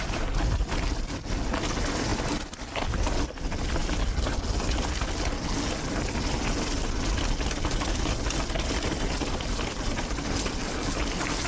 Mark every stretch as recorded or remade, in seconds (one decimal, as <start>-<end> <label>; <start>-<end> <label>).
0.0-11.5 recorded